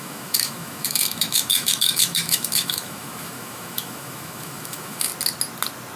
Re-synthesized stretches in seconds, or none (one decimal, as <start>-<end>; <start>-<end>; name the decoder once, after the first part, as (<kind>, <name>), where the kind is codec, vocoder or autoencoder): 0.0-5.1 (autoencoder, DAC-VAE)

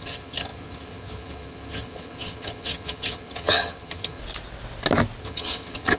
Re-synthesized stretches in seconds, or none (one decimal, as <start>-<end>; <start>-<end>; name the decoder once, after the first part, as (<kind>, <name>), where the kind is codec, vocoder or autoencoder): 0.0-4.2 (vocoder, HiFi-GAN); 5.2-6.0